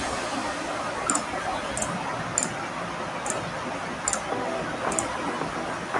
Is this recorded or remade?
recorded